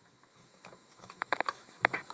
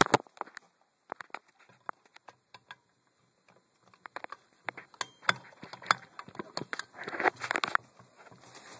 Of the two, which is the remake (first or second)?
first